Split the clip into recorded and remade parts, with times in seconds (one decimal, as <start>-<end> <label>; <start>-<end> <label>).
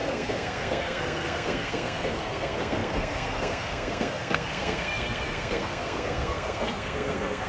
0.0-7.5 remade